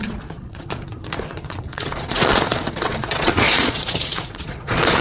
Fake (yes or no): yes